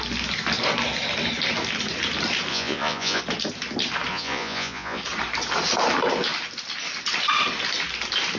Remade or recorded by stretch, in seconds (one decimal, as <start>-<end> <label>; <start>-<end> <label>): 0.0-2.5 recorded; 2.5-3.2 remade; 3.2-4.1 recorded; 4.1-5.0 remade; 5.0-8.4 recorded